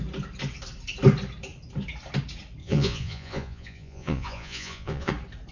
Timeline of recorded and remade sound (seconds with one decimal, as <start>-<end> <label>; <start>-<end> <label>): 0.0-2.6 recorded; 2.6-5.1 remade; 5.1-5.5 recorded